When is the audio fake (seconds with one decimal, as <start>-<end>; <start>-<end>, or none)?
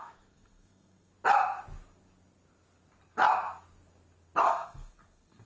0.0-1.1; 4.4-5.5